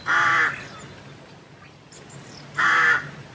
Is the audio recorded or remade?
recorded